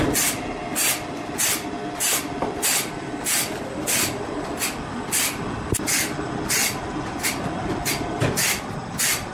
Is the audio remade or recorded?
recorded